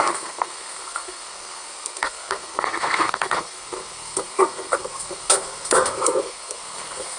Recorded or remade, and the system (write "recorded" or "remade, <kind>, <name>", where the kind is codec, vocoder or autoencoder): remade, codec, SNAC